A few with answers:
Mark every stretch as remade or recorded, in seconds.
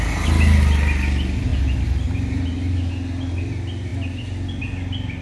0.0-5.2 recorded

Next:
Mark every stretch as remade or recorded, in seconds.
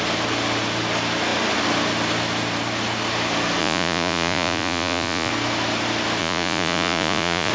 0.0-3.6 recorded; 3.6-5.3 remade; 5.3-6.2 recorded; 6.2-7.5 remade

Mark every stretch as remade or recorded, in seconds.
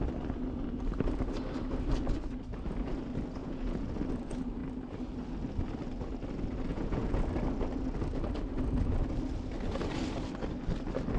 0.0-3.4 recorded; 3.4-3.9 remade; 3.9-6.7 recorded; 6.7-7.2 remade; 7.2-11.2 recorded